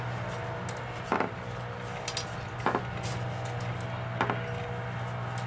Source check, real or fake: real